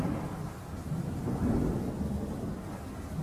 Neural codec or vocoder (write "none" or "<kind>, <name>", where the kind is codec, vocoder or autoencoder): none